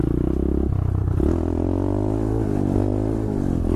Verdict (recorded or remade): recorded